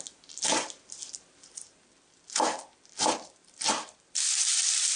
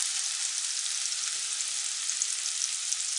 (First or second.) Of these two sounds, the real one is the second